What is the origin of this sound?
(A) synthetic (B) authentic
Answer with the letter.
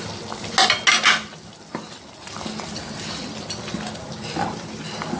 B